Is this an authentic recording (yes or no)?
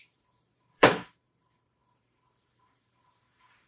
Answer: no